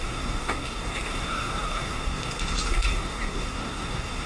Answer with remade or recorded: remade